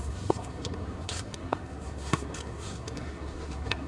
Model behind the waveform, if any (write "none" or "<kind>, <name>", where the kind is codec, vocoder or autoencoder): codec, SNAC